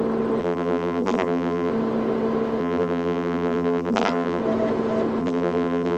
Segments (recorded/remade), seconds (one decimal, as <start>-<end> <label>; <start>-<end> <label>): 0.0-0.4 recorded; 0.4-1.7 remade; 1.7-2.6 recorded; 2.6-4.4 remade; 4.4-5.2 recorded; 5.2-6.0 remade

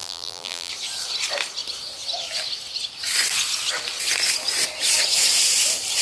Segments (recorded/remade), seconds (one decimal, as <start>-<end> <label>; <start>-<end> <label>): 0.0-0.7 remade; 0.7-6.0 recorded

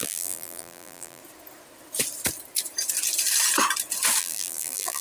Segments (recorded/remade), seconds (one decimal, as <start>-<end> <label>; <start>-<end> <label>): 0.0-1.2 remade; 1.2-4.2 recorded; 4.2-5.0 remade

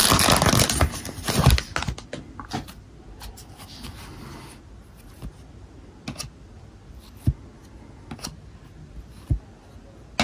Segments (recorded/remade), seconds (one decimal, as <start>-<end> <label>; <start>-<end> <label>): 0.0-10.2 recorded

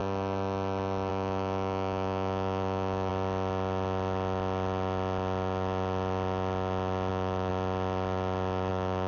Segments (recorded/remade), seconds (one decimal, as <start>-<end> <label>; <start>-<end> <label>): 0.0-1.1 recorded; 1.1-3.1 remade; 3.1-7.1 recorded; 7.1-7.5 remade; 7.5-8.7 recorded; 8.7-9.1 remade